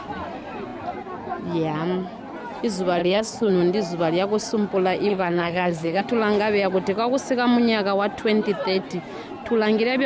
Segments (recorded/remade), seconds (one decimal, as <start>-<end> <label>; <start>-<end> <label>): 0.0-3.0 recorded; 3.0-3.5 remade; 3.5-5.1 recorded; 5.1-6.0 remade; 6.0-10.1 recorded